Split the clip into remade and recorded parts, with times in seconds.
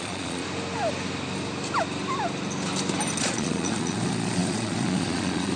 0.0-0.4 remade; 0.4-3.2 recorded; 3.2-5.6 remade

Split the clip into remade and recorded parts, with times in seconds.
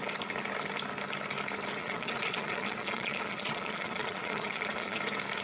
0.0-1.8 recorded; 1.8-5.0 remade; 5.0-5.4 recorded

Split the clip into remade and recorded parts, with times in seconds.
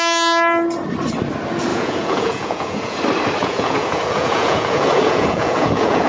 0.0-1.7 recorded; 1.7-3.0 remade; 3.0-3.4 recorded; 3.4-6.1 remade